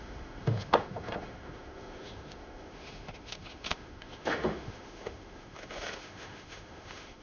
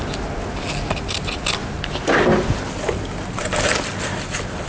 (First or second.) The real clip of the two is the second